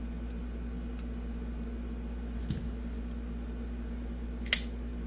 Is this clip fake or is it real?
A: real